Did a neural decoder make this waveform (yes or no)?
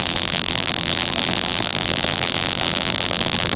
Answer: yes